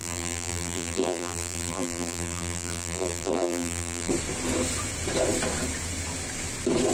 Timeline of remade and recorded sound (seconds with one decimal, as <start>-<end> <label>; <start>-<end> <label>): 0.0-4.1 remade; 4.1-6.9 recorded